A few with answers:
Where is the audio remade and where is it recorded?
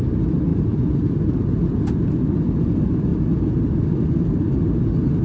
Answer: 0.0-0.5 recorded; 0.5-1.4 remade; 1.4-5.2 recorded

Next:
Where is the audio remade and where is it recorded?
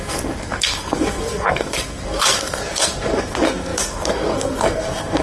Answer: 0.0-5.2 remade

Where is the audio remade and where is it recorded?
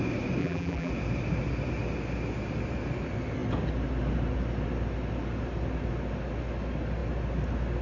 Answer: 0.0-0.4 recorded; 0.4-0.9 remade; 0.9-7.8 recorded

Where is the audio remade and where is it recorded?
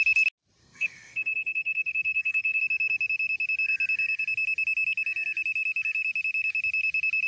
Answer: 0.0-0.6 recorded; 0.6-2.6 remade; 2.6-7.3 recorded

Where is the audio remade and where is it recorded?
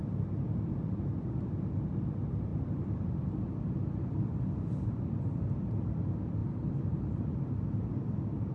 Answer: 0.0-2.5 recorded; 2.5-3.1 remade; 3.1-6.4 recorded; 6.4-7.0 remade; 7.0-8.5 recorded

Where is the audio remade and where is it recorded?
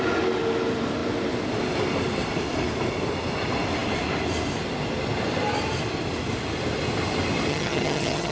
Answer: 0.0-7.5 recorded; 7.5-8.3 remade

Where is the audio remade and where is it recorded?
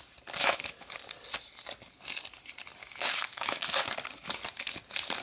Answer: 0.0-0.4 recorded; 0.4-0.9 remade; 0.9-2.8 recorded; 2.8-3.6 remade; 3.6-5.2 recorded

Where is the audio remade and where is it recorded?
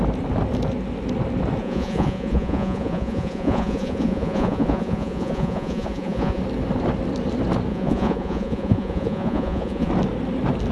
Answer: 0.0-1.6 recorded; 1.6-6.4 remade; 6.4-7.7 recorded; 7.7-9.9 remade; 9.9-10.7 recorded